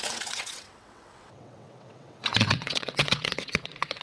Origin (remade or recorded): remade